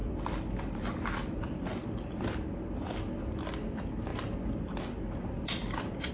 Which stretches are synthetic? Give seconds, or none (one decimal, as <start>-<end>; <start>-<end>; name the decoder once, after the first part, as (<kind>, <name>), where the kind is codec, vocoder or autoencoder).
none